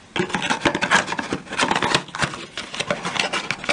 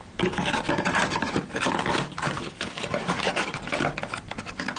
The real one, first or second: first